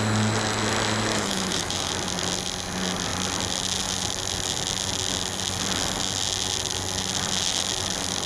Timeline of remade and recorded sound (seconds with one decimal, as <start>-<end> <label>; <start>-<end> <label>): 0.0-1.1 recorded; 1.1-1.9 remade; 1.9-8.3 recorded